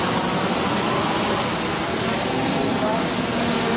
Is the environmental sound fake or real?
real